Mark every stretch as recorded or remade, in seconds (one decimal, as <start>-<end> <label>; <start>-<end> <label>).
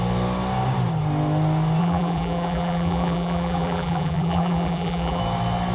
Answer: 0.0-1.8 recorded; 1.8-5.2 remade; 5.2-5.7 recorded